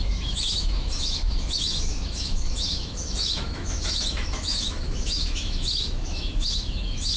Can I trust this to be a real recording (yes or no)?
no